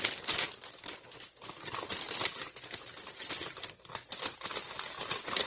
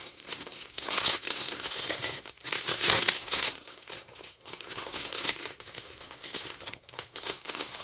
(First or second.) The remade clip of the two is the second